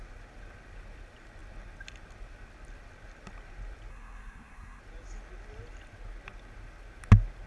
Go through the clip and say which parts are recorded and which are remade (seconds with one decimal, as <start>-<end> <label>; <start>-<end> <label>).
0.0-3.9 recorded; 3.9-4.8 remade; 4.8-7.5 recorded